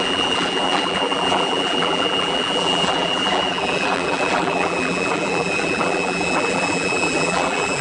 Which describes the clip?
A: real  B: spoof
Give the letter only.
B